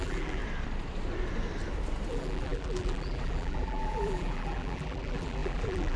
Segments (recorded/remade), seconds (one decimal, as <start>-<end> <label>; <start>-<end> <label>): 0.0-0.4 remade; 0.4-2.1 recorded; 2.1-6.0 remade